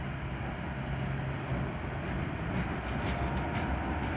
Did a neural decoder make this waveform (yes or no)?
no